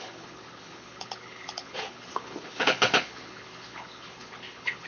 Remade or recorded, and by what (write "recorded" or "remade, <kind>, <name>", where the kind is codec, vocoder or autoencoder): remade, codec, HILCodec